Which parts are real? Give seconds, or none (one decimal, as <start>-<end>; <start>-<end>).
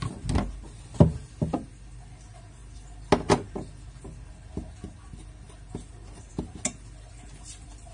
0.0-7.9